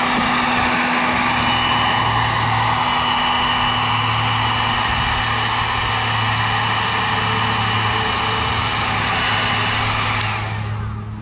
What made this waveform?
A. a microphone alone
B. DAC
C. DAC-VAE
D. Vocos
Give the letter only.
A